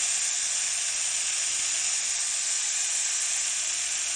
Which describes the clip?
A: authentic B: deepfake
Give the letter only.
A